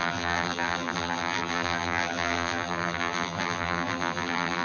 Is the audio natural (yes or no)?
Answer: no